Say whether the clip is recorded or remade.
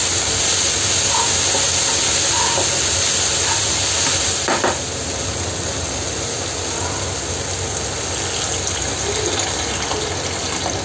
recorded